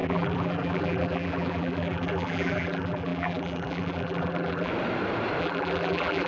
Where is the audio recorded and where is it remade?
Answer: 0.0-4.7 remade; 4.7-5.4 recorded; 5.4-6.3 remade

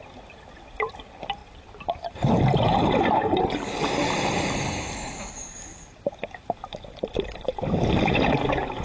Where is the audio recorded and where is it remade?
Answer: 0.0-8.8 remade

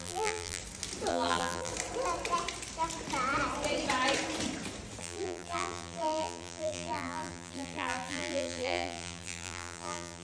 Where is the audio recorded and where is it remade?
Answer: 0.0-0.6 remade; 0.6-1.1 recorded; 1.1-1.7 remade; 1.7-5.0 recorded; 5.0-10.2 remade

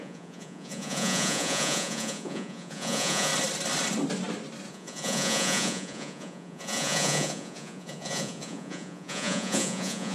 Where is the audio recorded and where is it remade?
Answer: 0.0-3.3 remade; 3.3-4.7 recorded; 4.7-10.1 remade

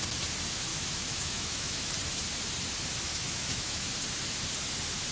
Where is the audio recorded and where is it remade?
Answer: 0.0-0.7 recorded; 0.7-1.9 remade; 1.9-3.1 recorded; 3.1-3.9 remade; 3.9-5.1 recorded

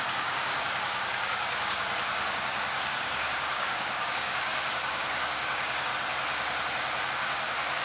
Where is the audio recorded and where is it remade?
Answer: 0.0-5.9 remade; 5.9-7.1 recorded; 7.1-7.8 remade

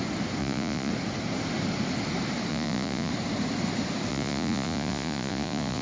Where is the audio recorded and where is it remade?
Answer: 0.0-0.4 recorded; 0.4-0.9 remade; 0.9-2.5 recorded; 2.5-3.1 remade; 3.1-4.1 recorded; 4.1-5.8 remade

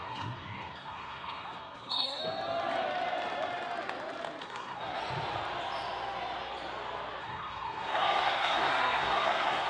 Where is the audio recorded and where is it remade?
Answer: 0.0-2.2 remade; 2.2-4.4 recorded; 4.4-5.0 remade; 5.0-7.2 recorded; 7.2-9.7 remade